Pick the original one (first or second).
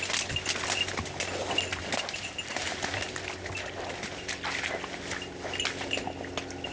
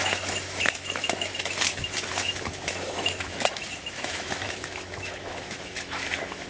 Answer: first